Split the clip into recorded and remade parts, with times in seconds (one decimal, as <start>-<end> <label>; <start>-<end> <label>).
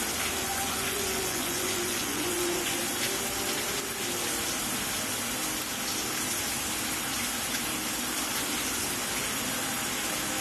0.0-0.4 recorded; 0.4-2.8 remade; 2.8-10.4 recorded